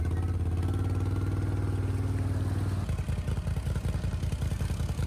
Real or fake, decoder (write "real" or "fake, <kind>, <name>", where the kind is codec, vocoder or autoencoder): real